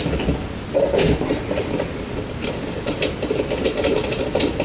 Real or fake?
real